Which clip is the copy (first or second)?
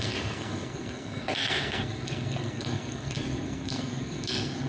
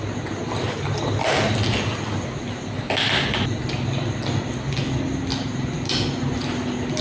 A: first